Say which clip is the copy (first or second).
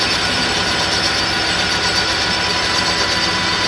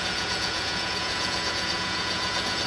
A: second